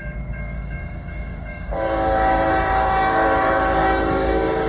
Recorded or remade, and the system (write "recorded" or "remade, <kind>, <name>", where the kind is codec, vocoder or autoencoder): remade, codec, DAC